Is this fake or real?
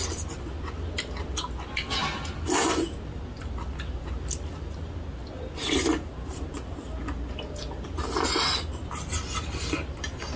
real